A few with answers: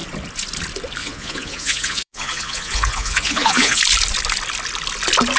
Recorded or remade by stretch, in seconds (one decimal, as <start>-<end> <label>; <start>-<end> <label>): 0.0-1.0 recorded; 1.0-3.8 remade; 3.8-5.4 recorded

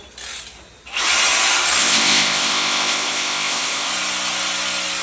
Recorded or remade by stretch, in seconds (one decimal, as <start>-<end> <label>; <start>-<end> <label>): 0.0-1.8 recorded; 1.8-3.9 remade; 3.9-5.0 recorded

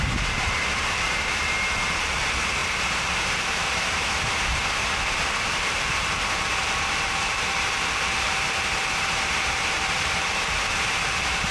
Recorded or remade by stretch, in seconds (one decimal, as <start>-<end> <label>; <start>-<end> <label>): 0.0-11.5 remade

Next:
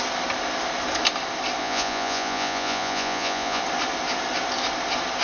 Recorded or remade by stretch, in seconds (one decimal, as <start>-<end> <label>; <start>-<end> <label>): 0.0-1.6 recorded; 1.6-3.6 remade; 3.6-5.2 recorded

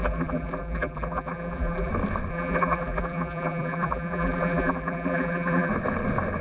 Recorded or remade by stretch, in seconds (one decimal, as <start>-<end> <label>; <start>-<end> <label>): 0.0-1.9 remade; 1.9-2.3 recorded; 2.3-5.7 remade; 5.7-6.4 recorded

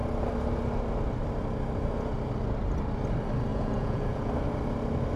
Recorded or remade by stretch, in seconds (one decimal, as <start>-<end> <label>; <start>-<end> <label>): 0.0-3.5 recorded; 3.5-4.3 remade; 4.3-5.2 recorded

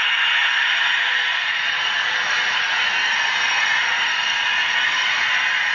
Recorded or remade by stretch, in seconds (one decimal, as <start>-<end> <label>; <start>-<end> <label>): 0.0-0.4 recorded; 0.4-2.8 remade; 2.8-3.5 recorded; 3.5-5.3 remade; 5.3-5.7 recorded